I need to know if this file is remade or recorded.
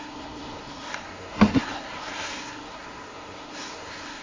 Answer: remade